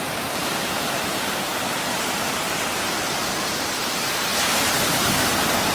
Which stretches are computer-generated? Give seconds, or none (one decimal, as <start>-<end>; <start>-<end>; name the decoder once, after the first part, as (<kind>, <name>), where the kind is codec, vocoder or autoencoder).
0.0-5.7 (vocoder, BigVGAN v2)